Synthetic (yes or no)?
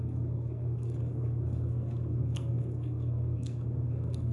yes